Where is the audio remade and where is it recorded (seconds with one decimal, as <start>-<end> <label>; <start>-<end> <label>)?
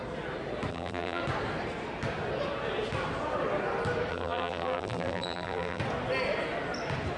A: 0.0-0.7 recorded; 0.7-1.2 remade; 1.2-4.1 recorded; 4.1-5.8 remade; 5.8-7.2 recorded